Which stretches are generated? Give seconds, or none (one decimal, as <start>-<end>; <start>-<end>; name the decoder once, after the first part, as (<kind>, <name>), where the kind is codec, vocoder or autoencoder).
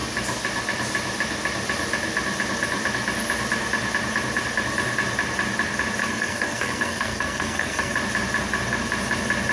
6.0-7.9 (codec, SNAC)